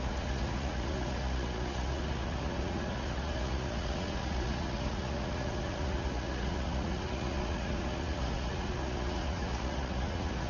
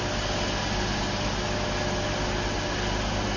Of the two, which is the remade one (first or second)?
first